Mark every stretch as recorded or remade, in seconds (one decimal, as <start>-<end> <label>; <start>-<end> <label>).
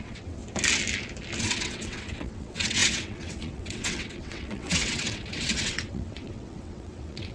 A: 0.0-0.4 remade; 0.4-1.4 recorded; 1.4-7.3 remade